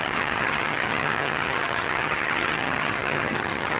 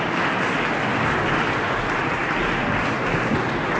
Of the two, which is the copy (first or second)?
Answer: first